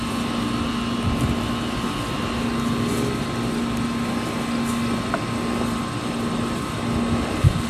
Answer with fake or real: real